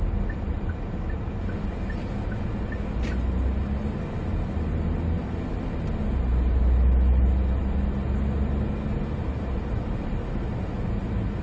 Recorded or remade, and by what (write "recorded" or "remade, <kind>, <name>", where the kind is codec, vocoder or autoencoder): recorded